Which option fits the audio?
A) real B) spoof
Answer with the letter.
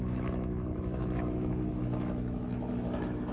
B